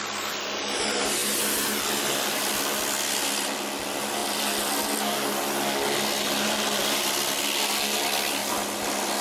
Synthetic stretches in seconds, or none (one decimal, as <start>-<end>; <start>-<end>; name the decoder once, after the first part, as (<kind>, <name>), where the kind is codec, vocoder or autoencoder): none